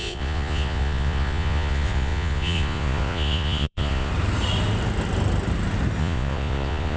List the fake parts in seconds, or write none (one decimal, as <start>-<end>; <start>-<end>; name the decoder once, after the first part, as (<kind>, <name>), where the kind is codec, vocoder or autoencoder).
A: 0.0-4.1 (vocoder, Vocos); 6.0-7.0